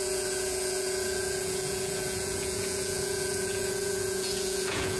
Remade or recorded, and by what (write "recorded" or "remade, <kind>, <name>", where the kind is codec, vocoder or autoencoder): remade, vocoder, Vocos